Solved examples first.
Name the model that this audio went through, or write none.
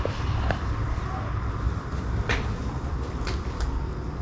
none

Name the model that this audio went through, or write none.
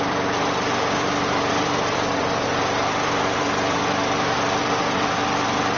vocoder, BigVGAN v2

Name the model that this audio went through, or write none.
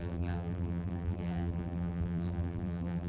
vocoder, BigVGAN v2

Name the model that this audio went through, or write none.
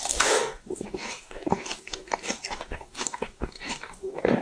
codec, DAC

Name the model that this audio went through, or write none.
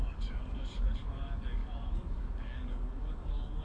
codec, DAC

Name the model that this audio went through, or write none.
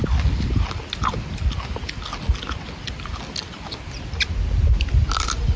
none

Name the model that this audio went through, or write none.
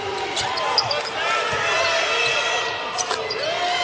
none